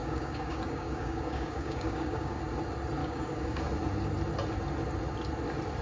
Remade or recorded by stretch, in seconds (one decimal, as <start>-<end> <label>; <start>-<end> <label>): 0.0-2.4 remade; 2.4-3.0 recorded; 3.0-3.6 remade; 3.6-5.8 recorded